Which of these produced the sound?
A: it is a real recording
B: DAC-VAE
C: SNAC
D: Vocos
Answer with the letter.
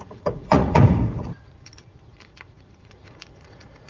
D